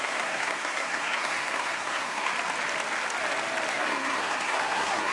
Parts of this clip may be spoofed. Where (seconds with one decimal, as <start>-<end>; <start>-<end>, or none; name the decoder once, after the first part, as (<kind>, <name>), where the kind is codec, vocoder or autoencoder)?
0.0-2.3 (codec, SNAC); 3.7-5.1